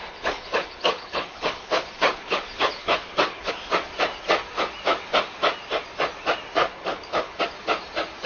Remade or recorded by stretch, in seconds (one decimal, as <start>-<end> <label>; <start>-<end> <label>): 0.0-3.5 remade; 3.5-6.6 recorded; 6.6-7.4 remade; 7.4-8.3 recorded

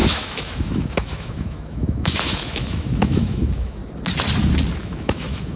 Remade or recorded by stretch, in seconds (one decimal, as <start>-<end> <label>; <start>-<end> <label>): 0.0-3.8 remade; 3.8-4.8 recorded; 4.8-5.6 remade

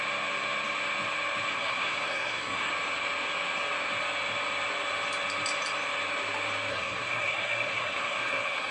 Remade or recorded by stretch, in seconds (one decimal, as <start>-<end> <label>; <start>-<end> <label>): 0.0-1.5 recorded; 1.5-2.7 remade; 2.7-6.7 recorded; 6.7-8.7 remade

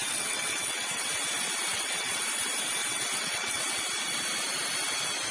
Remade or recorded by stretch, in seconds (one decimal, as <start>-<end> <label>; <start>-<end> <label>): 0.0-1.1 remade; 1.1-1.7 recorded; 1.7-2.2 remade; 2.2-2.8 recorded; 2.8-3.8 remade; 3.8-5.3 recorded

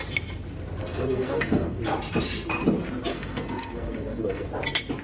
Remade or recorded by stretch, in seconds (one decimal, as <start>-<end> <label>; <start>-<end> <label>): 0.0-0.8 recorded; 0.8-1.8 remade; 1.8-3.1 recorded; 3.1-4.5 remade; 4.5-5.0 recorded

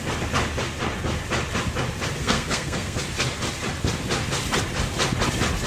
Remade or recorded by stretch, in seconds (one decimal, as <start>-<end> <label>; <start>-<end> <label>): 0.0-2.2 recorded; 2.2-3.0 remade; 3.0-5.7 recorded

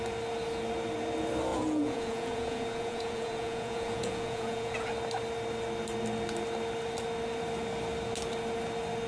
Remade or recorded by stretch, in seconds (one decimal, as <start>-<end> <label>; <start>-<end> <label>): 0.0-1.5 recorded; 1.5-4.9 remade; 4.9-9.1 recorded